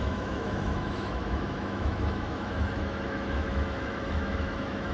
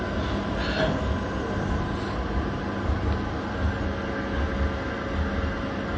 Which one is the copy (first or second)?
first